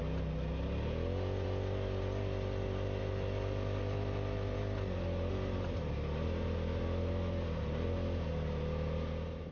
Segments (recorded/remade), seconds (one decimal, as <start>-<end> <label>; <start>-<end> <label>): 0.0-9.5 recorded